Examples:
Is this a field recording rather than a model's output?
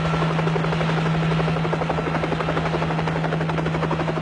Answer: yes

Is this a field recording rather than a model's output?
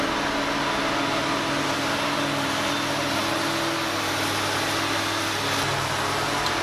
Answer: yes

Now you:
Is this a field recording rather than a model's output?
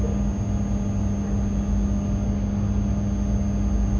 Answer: yes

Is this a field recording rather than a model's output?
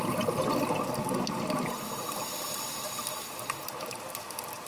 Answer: yes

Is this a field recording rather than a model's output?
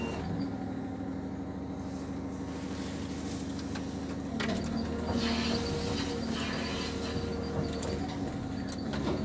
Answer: yes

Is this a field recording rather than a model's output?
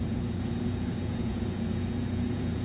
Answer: no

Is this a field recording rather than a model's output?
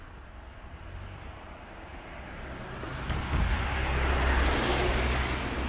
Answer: yes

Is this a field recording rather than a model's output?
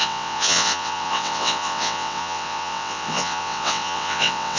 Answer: no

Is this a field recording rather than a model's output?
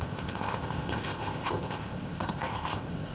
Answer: no